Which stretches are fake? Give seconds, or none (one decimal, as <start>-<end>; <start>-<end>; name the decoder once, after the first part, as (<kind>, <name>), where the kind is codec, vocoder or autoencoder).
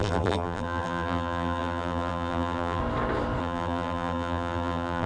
0.0-2.8 (vocoder, BigVGAN v2); 3.4-5.1